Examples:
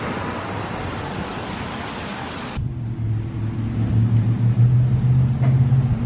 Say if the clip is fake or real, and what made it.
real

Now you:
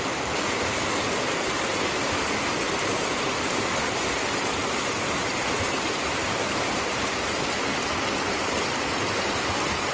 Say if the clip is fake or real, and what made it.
real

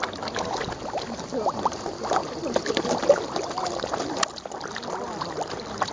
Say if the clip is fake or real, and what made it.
real